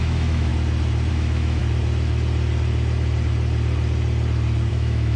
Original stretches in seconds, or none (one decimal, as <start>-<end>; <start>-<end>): 0.5-1.1; 1.6-4.7